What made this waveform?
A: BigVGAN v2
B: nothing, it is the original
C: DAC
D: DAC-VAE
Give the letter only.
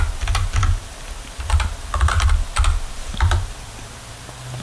B